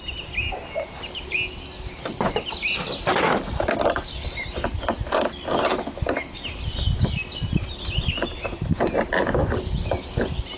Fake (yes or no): no